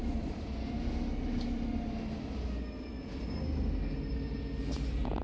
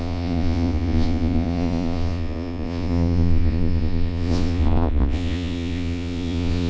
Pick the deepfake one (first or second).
second